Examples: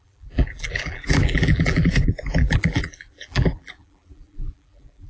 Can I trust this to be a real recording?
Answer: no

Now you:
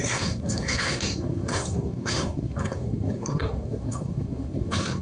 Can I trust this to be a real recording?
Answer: no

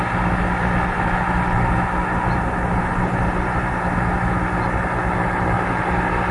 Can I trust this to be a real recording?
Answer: yes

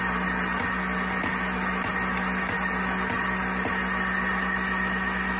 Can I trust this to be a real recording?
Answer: yes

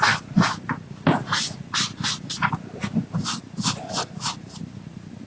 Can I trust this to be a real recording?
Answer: yes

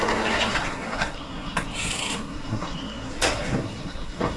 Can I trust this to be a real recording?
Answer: no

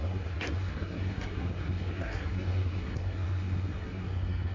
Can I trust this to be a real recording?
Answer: no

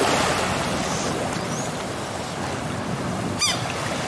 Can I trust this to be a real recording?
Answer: yes